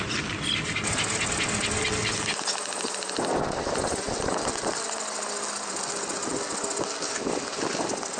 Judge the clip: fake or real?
real